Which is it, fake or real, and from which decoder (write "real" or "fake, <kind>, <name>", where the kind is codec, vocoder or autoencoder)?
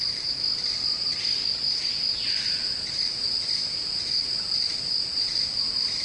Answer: real